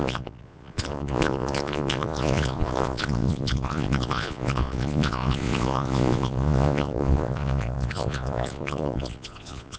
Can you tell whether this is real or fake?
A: fake